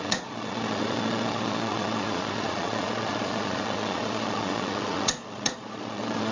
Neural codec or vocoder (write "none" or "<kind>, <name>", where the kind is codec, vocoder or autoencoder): vocoder, Vocos